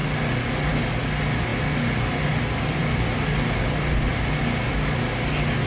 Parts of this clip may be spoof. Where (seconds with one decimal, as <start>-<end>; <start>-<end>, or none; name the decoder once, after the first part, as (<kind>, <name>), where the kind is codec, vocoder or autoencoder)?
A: none